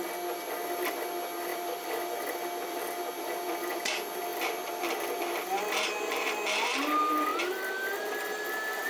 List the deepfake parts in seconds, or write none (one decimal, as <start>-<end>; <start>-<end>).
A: 1.5-2.1; 4.3-5.2